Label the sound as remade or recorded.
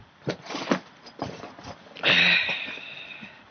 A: recorded